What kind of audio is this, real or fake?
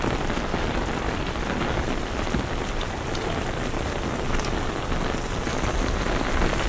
real